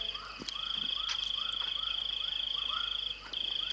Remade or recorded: recorded